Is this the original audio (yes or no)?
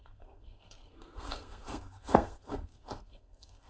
no